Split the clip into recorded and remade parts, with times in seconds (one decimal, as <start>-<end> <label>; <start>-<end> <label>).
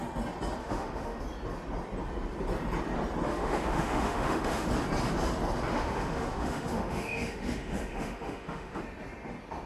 0.0-0.6 recorded; 0.6-1.2 remade; 1.2-3.3 recorded; 3.3-4.7 remade; 4.7-5.7 recorded; 5.7-8.8 remade; 8.8-9.7 recorded